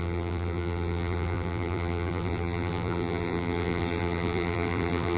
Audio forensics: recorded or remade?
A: remade